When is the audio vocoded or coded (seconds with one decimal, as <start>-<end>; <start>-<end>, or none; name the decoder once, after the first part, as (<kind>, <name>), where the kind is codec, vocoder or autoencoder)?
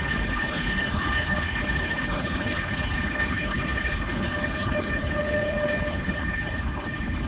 0.0-7.3 (codec, HILCodec)